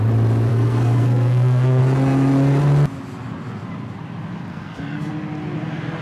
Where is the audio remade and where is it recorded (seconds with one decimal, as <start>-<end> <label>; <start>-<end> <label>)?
0.0-0.5 recorded; 0.5-1.8 remade; 1.8-4.5 recorded; 4.5-5.1 remade; 5.1-6.0 recorded